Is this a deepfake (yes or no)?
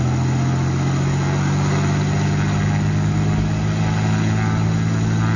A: no